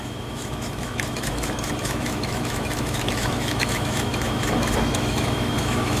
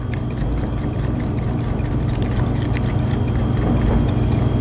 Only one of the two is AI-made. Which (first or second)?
first